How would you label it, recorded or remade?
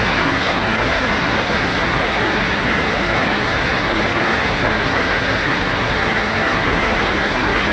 remade